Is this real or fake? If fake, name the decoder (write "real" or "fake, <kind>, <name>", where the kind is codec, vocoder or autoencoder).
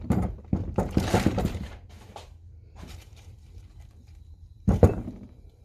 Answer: fake, vocoder, BigVGAN v2